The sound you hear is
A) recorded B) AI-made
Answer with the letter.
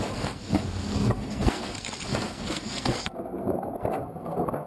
B